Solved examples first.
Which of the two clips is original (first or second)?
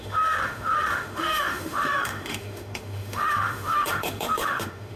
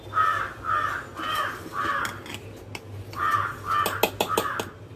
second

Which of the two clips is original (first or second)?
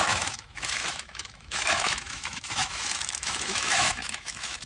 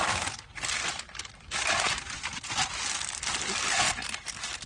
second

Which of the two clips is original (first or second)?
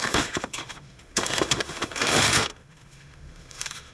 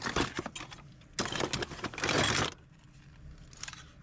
second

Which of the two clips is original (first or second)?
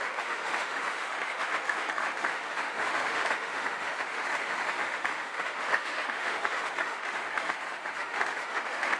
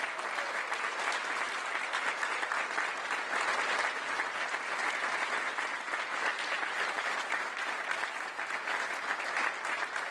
second